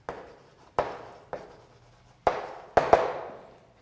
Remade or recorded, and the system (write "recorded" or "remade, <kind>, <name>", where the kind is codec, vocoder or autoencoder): recorded